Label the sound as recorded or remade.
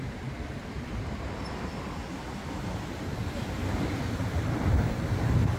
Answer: remade